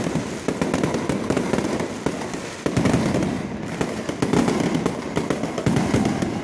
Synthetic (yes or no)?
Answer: no